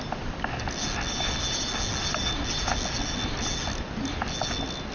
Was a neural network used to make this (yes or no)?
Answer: no